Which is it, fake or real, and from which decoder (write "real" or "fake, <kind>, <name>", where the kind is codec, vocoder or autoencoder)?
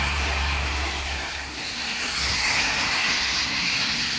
fake, codec, SNAC